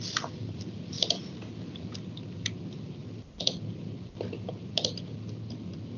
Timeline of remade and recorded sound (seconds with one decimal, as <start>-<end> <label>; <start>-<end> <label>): 0.0-6.0 recorded